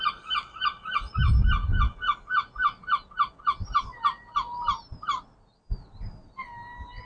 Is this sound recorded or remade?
recorded